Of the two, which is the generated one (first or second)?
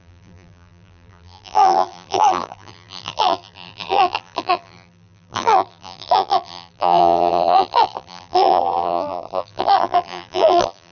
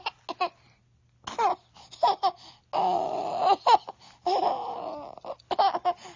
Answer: first